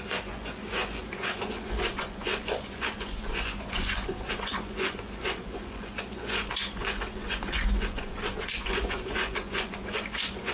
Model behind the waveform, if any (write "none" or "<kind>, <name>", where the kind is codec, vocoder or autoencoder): vocoder, Vocos